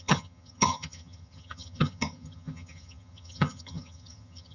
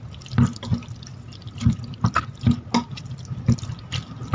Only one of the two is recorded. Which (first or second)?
second